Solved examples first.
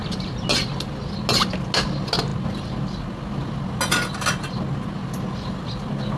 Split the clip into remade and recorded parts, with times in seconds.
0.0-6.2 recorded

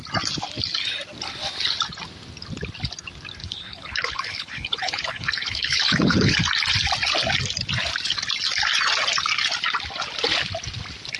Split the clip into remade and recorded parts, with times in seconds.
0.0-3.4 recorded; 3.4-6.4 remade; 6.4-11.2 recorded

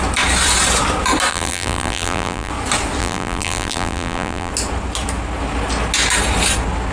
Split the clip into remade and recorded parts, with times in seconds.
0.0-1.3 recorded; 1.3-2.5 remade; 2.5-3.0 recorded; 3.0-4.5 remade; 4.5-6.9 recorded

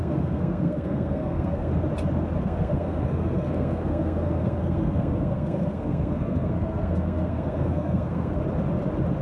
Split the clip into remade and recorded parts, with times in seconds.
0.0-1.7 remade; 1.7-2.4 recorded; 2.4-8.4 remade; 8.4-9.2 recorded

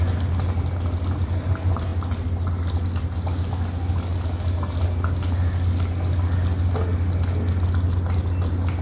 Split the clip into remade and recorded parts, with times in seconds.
0.0-8.8 recorded

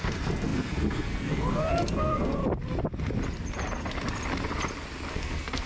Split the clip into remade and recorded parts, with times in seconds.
0.0-2.4 remade; 2.4-5.1 recorded; 5.1-5.7 remade